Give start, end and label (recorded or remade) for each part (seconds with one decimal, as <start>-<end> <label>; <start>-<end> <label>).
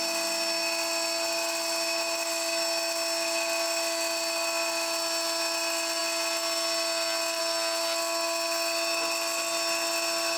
0.0-10.4 recorded